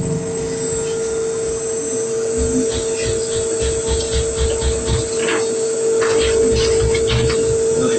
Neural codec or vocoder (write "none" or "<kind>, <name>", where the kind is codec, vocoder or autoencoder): none